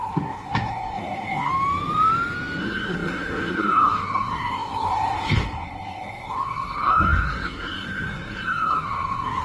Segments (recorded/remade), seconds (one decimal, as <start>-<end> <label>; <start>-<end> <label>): 0.0-1.5 remade; 1.5-2.6 recorded; 2.6-9.4 remade